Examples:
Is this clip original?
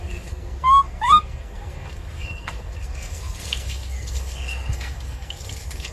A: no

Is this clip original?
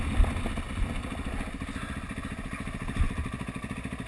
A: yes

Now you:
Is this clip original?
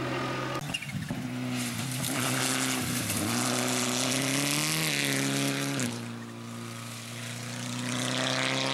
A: yes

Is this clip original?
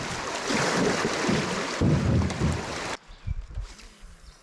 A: yes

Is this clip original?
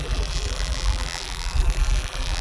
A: no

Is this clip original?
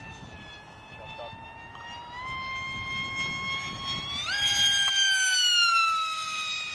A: yes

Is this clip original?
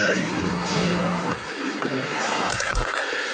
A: no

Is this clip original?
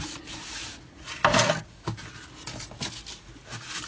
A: yes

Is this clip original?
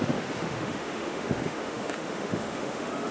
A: no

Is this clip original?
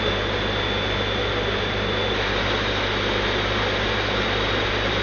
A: yes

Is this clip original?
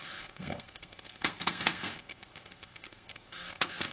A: no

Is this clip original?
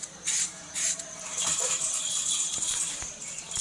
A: no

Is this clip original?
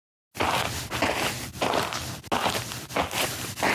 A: yes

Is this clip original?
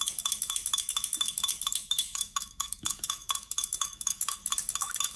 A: no